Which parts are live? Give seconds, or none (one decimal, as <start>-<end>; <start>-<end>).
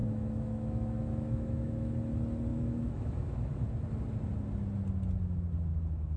1.9-2.5; 3.6-6.2